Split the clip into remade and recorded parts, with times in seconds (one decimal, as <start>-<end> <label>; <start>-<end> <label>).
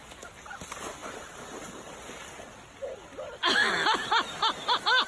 0.0-5.1 recorded